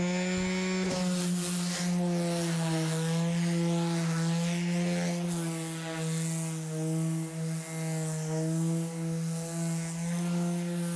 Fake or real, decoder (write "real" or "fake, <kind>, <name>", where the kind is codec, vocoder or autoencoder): real